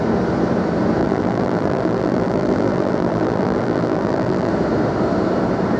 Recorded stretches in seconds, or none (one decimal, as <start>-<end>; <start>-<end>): 0.0-1.0; 4.5-5.8